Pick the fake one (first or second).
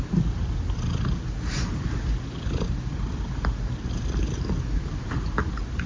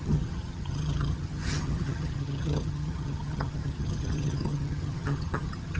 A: second